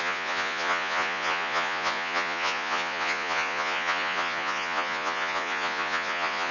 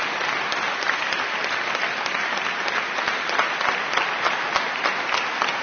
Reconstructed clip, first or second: first